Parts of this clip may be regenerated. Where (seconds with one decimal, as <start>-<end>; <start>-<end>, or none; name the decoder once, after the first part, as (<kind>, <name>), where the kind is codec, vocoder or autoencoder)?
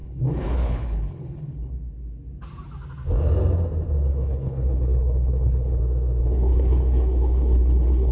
0.0-1.7 (codec, HILCodec); 4.1-5.8; 6.2-8.1